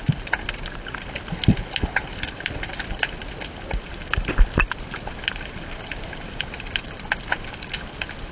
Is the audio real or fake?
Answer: real